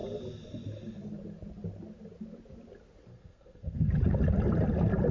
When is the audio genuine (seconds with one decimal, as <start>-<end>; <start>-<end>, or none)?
0.0-3.1; 3.9-5.1